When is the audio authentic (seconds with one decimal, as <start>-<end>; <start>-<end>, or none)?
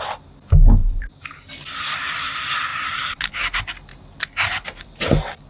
0.0-0.8; 1.5-2.7; 3.3-3.9; 5.1-5.5